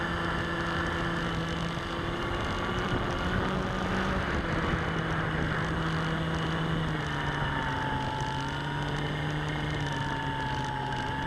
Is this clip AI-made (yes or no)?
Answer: no